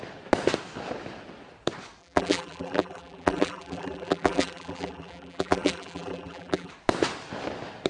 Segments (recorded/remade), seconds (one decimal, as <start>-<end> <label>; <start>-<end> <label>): 0.0-2.0 recorded; 2.0-6.7 remade; 6.7-7.9 recorded